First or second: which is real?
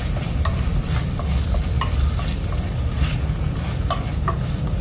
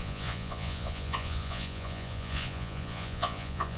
first